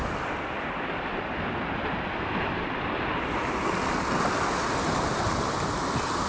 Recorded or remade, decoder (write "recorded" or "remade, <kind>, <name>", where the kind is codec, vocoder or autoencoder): recorded